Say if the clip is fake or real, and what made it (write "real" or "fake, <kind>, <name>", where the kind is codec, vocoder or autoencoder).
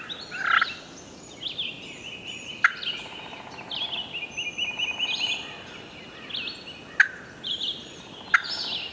real